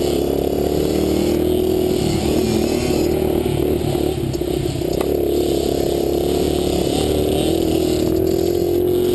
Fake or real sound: real